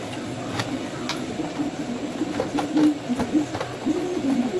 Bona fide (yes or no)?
yes